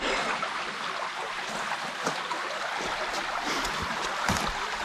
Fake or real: real